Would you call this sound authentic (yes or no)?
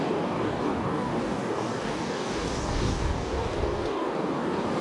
no